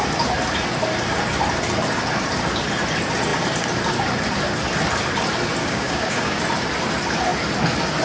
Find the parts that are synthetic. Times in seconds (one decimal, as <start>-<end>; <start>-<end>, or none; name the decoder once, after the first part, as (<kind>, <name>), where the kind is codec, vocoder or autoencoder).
5.6-6.4 (codec, DAC)